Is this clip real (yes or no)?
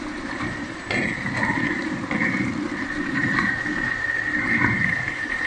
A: no